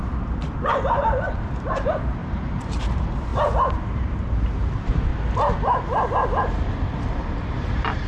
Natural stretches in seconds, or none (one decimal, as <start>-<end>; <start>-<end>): 5.1-7.5